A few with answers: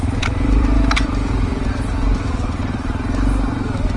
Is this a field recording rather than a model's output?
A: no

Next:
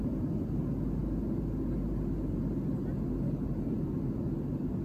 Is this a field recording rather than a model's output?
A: yes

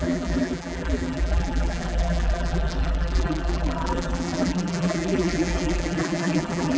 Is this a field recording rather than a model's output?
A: no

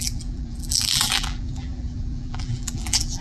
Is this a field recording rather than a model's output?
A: no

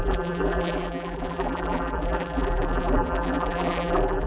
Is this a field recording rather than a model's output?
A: no